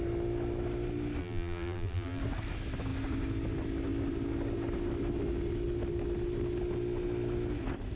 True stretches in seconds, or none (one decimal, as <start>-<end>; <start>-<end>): 0.0-1.2; 2.2-8.0